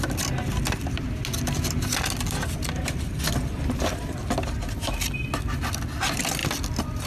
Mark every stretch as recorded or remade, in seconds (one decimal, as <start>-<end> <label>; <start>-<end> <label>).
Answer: 0.0-7.1 recorded